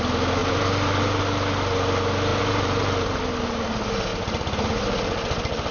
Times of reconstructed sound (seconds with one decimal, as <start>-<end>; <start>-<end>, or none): 0.4-1.2; 2.3-3.2